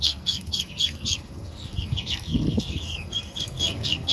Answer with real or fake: fake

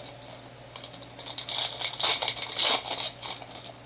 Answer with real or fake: real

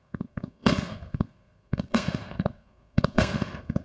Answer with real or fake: fake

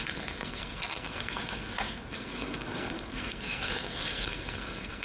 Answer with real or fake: fake